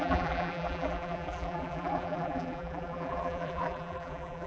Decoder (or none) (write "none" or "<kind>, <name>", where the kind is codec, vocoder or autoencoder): vocoder, BigVGAN v2